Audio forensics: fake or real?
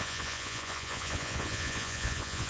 fake